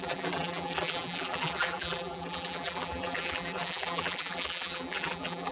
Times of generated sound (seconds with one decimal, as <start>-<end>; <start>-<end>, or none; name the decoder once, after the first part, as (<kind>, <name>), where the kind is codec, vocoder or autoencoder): 0.0-5.5 (vocoder, BigVGAN v2)